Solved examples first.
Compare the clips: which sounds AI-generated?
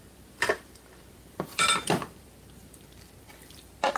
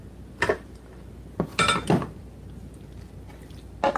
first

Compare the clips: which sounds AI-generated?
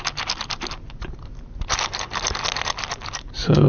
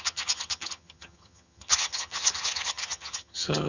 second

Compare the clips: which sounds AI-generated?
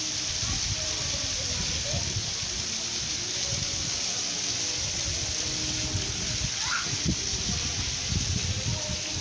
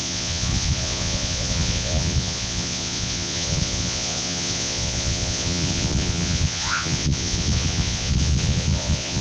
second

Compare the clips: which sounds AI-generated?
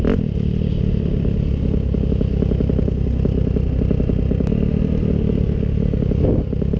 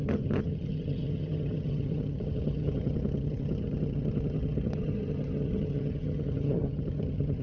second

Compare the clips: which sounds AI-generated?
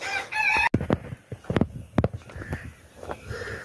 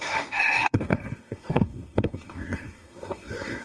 second